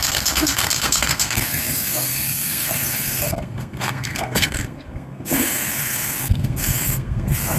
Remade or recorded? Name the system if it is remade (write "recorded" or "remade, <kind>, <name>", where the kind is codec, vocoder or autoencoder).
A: remade, codec, SNAC